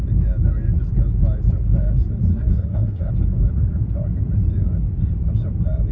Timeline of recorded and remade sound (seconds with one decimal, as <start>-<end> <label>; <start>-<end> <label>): 0.0-2.3 recorded; 2.3-3.1 remade; 3.1-5.9 recorded